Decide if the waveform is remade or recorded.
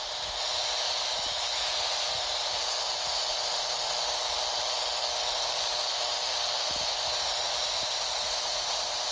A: recorded